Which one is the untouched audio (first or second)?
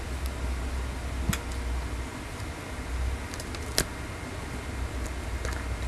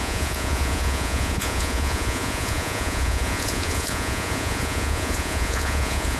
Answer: first